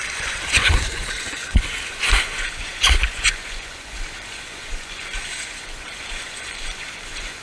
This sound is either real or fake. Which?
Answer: fake